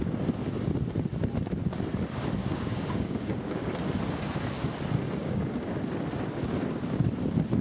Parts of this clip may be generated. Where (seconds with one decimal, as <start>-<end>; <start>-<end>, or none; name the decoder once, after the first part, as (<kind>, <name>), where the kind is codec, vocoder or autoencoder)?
2.4-3.7 (codec, DAC); 5.2-5.8